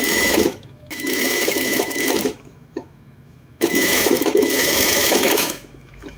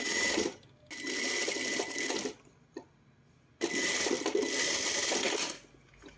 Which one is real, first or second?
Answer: second